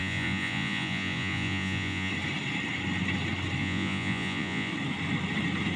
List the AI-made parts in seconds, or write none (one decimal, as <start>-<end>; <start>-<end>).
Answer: 0.0-2.1; 3.6-4.7